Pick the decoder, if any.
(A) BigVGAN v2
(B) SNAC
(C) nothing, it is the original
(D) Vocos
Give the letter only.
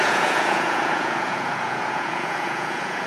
D